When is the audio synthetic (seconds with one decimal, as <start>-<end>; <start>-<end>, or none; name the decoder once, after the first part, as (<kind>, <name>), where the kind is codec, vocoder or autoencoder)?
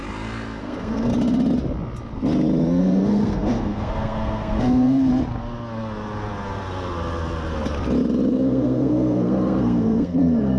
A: 0.6-1.1 (codec, SNAC); 2.8-5.1; 8.3-10.6